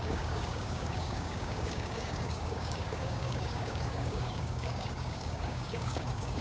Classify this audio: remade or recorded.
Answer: remade